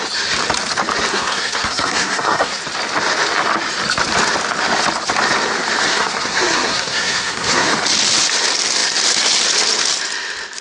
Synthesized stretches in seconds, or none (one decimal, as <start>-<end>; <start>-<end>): 1.1-2.6; 5.8-7.7